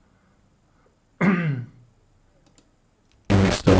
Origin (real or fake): real